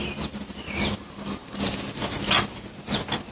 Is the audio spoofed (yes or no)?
no